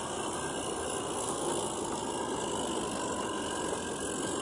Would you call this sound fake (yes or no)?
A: no